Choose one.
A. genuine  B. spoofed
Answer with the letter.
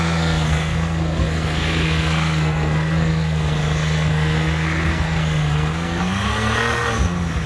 B